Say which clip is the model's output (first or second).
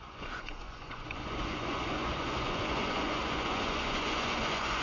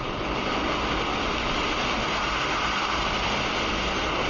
first